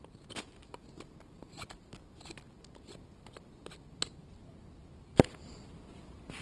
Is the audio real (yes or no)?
yes